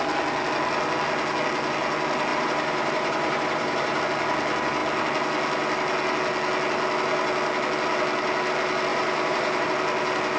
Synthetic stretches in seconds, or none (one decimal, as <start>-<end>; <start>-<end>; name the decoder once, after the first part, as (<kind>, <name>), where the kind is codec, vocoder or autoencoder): 2.3-4.0 (vocoder, BigVGAN v2); 8.9-9.7